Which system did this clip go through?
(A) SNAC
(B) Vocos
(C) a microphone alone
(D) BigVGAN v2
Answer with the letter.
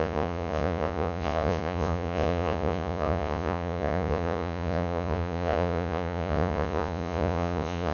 B